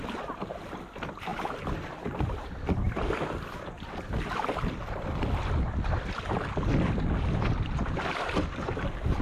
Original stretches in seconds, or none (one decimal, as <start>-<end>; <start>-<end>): 0.0-9.2